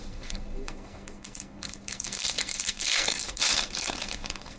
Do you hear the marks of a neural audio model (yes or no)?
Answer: yes